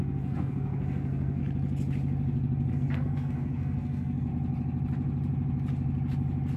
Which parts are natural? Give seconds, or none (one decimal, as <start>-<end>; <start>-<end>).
1.4-2.7; 4.3-6.6